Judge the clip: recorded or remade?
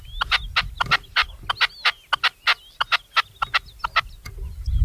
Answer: recorded